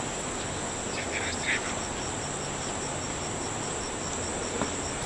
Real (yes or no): yes